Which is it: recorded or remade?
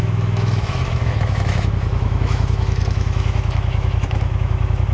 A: remade